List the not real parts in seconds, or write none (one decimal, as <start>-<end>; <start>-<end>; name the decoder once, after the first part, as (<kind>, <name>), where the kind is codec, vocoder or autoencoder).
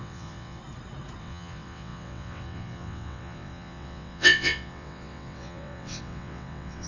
0.0-0.6 (vocoder, WaveNeXt); 1.2-6.9